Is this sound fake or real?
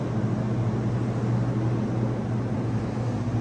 real